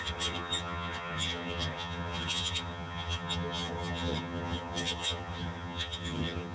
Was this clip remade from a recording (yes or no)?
yes